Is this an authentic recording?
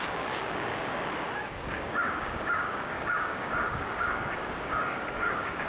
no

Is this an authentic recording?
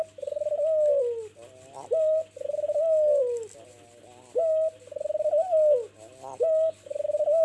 yes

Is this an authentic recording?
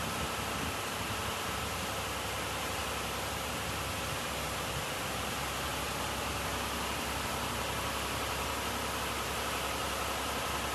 yes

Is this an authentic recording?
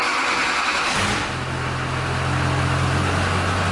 yes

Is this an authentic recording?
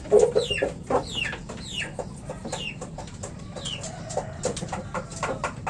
yes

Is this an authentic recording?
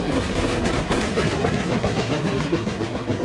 no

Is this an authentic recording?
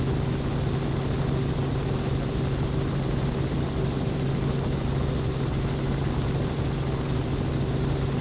yes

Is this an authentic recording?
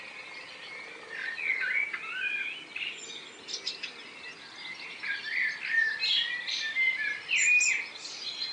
yes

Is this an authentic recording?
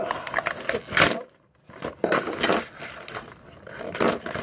yes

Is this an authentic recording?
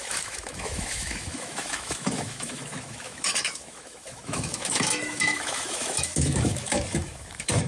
no